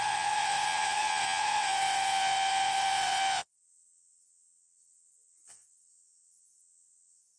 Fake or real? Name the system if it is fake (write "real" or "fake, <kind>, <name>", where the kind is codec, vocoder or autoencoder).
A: fake, vocoder, WaveNeXt